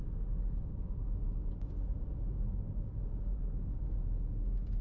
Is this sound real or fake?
real